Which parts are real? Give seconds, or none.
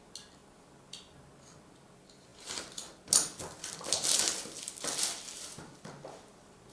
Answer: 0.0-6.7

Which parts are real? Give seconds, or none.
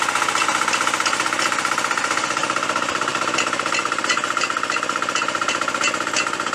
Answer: 0.0-3.1; 4.0-6.5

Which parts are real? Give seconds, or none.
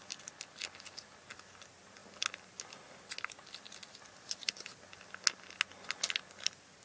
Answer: 0.0-6.8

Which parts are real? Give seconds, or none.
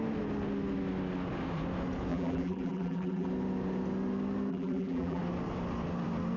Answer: 0.0-2.1; 3.3-4.5; 5.2-6.4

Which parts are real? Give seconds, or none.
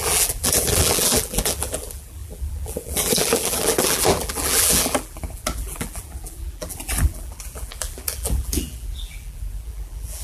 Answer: none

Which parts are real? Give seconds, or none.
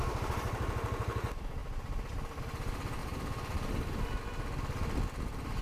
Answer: 0.0-1.6; 2.4-3.0; 4.2-5.6